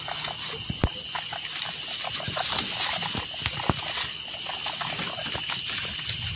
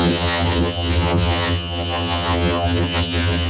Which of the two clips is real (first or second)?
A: first